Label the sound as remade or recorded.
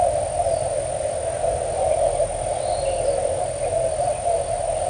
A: recorded